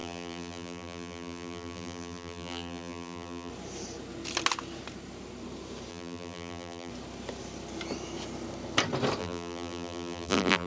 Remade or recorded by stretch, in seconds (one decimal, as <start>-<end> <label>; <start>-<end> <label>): 0.0-3.5 remade; 3.5-5.9 recorded; 5.9-6.9 remade; 6.9-9.2 recorded; 9.2-10.7 remade